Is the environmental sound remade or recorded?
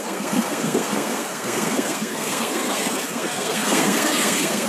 remade